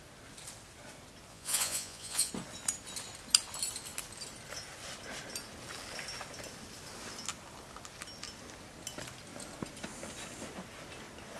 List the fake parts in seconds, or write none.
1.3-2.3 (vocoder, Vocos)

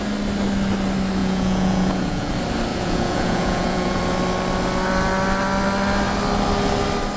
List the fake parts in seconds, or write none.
1.2-2.3 (vocoder, Vocos); 2.7-4.0

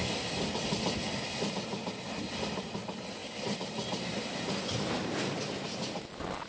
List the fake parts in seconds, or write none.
none

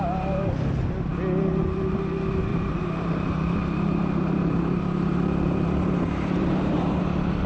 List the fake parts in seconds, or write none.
2.5-7.0 (vocoder, BigVGAN v2)

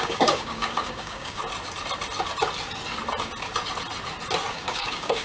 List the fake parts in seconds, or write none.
0.0-1.4 (codec, DAC); 4.5-5.2